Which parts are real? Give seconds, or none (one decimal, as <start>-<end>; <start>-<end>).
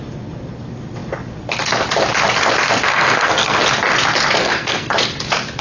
0.0-2.9; 3.6-4.4; 4.9-5.6